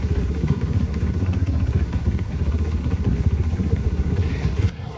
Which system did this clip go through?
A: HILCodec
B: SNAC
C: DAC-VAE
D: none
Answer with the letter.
B